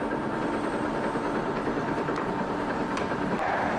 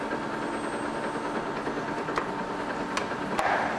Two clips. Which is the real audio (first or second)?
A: second